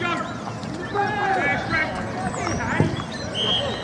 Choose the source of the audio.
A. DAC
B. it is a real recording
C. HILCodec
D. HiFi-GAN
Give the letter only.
B